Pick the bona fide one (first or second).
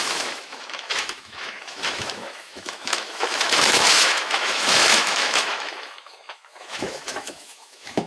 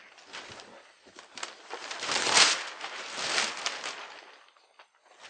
second